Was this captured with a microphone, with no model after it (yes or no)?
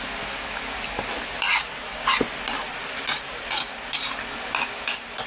yes